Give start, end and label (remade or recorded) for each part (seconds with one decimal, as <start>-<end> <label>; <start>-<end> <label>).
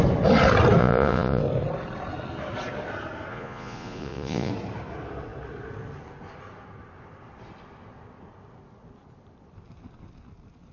0.0-0.8 recorded; 0.8-1.4 remade; 1.4-3.3 recorded; 3.3-4.5 remade; 4.5-10.7 recorded